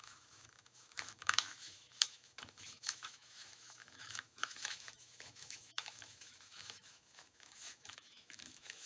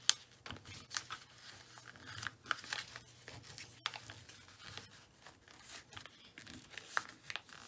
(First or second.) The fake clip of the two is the first